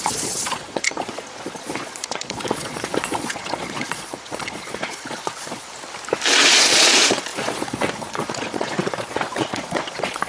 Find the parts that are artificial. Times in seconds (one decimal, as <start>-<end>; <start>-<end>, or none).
0.0-5.7; 6.4-10.3